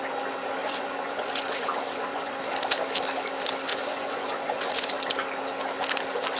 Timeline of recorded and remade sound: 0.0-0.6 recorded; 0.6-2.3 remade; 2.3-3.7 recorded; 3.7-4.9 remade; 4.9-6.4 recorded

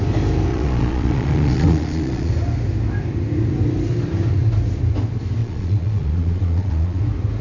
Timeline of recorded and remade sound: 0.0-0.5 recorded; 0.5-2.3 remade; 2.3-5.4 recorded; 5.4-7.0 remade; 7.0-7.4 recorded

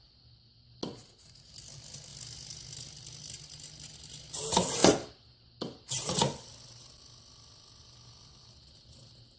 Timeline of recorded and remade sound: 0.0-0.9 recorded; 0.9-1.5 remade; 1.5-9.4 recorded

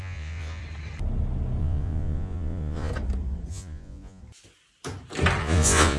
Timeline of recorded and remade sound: 0.0-0.6 remade; 0.6-1.6 recorded; 1.6-2.9 remade; 2.9-3.5 recorded; 3.5-4.2 remade; 4.2-5.4 recorded; 5.4-6.0 remade